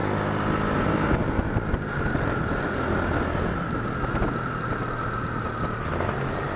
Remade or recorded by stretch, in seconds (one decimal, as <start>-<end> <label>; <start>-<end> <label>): 0.0-6.6 recorded

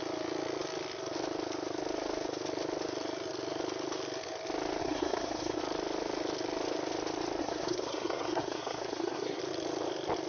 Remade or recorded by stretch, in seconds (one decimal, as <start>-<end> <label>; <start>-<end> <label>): 0.0-4.8 recorded; 4.8-5.6 remade; 5.6-7.4 recorded; 7.4-9.4 remade; 9.4-10.3 recorded

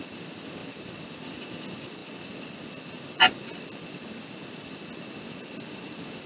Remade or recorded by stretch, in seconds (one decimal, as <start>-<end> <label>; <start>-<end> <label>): 0.0-6.3 recorded

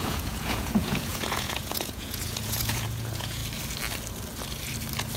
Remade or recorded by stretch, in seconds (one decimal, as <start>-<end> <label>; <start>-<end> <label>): 0.0-3.4 remade; 3.4-5.2 recorded

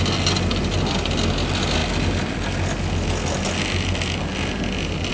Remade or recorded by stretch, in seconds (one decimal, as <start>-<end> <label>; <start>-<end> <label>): 0.0-5.1 recorded

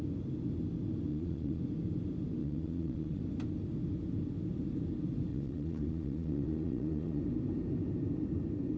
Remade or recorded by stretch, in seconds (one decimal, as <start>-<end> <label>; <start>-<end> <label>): 0.0-1.1 recorded; 1.1-1.6 remade; 1.6-2.4 recorded; 2.4-3.2 remade; 3.2-5.3 recorded; 5.3-7.2 remade; 7.2-8.8 recorded

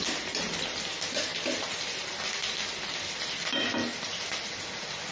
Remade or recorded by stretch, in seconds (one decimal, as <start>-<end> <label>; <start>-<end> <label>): 0.0-5.1 recorded